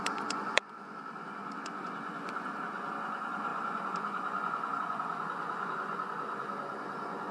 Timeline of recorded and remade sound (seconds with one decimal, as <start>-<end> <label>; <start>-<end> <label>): 0.0-7.3 remade